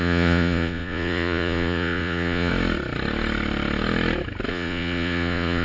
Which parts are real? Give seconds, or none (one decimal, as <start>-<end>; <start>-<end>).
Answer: 2.5-4.5